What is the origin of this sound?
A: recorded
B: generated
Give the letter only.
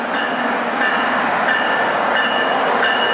A